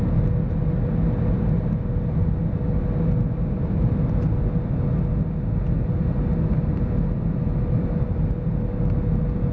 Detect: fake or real real